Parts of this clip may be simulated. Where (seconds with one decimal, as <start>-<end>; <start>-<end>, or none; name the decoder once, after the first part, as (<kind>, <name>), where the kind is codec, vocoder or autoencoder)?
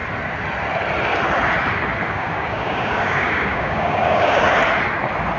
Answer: 2.1-4.4 (codec, DAC)